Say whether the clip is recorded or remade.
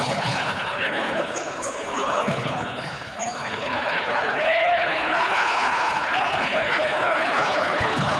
remade